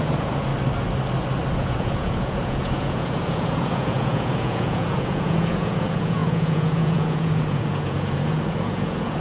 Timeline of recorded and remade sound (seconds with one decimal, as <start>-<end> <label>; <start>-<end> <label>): 0.0-0.5 remade; 0.5-1.6 recorded; 1.6-9.2 remade